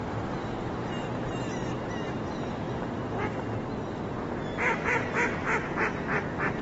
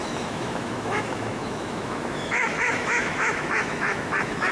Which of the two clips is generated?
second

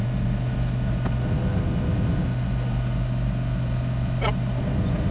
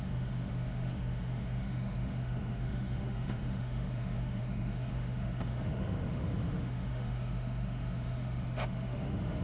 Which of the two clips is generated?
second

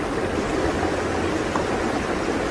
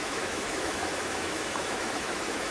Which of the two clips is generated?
second